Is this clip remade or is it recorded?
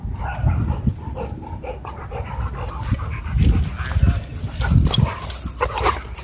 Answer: recorded